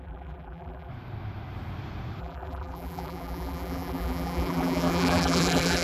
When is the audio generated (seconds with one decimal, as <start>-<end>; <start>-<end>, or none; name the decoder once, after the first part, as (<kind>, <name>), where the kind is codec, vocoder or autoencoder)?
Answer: 0.0-0.9 (vocoder, BigVGAN v2); 2.2-5.8